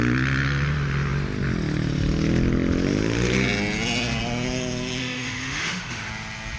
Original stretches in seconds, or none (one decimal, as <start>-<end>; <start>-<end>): 0.0-5.0; 6.1-6.6